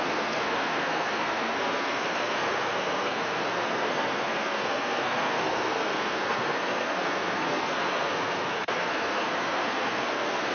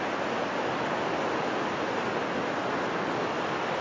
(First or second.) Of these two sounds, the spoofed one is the first